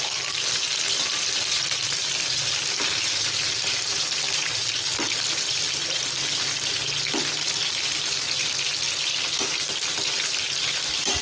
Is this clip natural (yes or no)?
yes